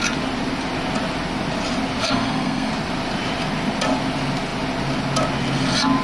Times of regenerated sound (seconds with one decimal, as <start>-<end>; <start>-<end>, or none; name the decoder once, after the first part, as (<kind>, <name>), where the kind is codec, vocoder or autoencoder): 2.0-2.7 (codec, SNAC)